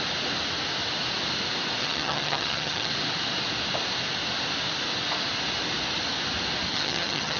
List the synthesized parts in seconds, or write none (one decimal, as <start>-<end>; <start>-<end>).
1.8-2.9; 6.7-7.4